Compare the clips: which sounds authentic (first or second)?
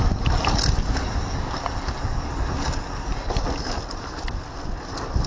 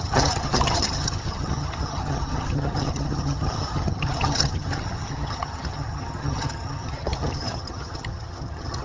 first